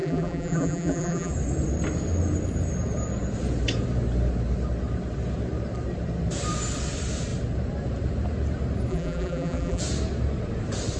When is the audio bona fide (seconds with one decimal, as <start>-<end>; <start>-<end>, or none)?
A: 1.3-8.9; 9.8-11.0

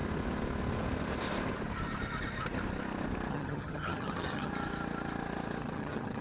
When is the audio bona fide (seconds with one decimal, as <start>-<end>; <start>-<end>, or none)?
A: 0.0-3.3; 4.5-5.6

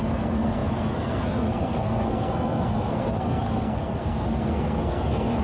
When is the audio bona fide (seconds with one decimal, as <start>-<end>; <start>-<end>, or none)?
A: none

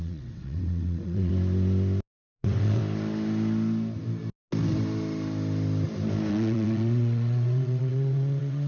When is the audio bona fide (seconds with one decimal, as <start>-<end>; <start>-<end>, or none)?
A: 1.3-2.4; 2.8-6.3

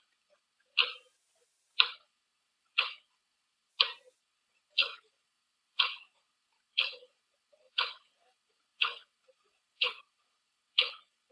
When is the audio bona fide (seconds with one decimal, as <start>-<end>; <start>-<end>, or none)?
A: 0.8-1.9; 3.7-4.2